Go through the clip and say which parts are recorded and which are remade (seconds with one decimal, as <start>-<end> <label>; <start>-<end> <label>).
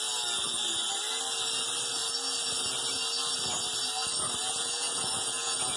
0.0-4.4 recorded; 4.4-5.8 remade